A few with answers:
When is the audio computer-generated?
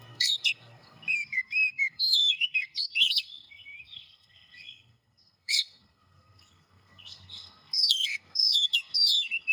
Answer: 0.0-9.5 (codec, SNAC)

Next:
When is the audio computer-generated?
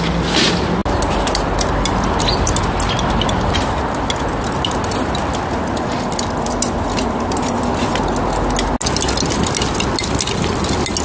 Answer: none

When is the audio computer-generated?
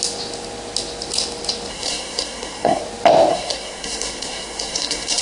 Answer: 1.7-2.8 (codec, SNAC); 3.3-5.2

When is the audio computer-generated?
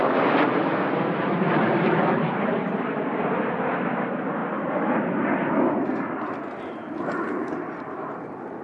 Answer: 4.4-5.0 (vocoder, BigVGAN v2)